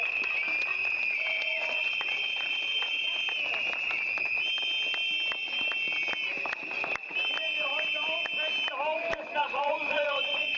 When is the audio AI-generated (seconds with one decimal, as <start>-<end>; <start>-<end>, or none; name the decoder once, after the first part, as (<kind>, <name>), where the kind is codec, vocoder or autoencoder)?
0.7-3.2 (vocoder, Vocos); 9.4-10.6